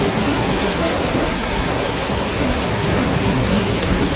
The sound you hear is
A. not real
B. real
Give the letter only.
A